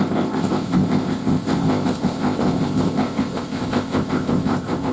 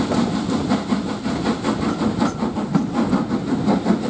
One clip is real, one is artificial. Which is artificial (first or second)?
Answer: first